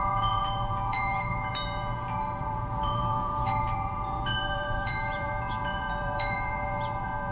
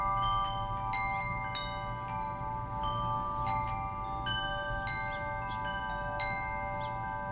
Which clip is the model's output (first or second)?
first